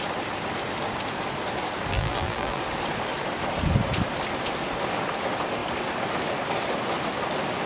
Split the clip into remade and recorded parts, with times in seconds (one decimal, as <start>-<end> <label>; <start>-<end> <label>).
0.0-1.9 recorded; 1.9-2.6 remade; 2.6-7.7 recorded